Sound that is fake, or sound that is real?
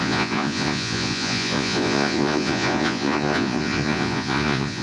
fake